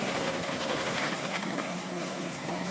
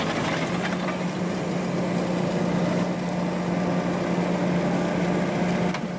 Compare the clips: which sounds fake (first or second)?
first